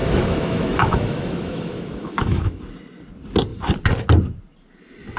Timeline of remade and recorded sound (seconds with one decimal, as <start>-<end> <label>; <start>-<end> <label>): 0.0-2.6 remade; 2.6-5.2 recorded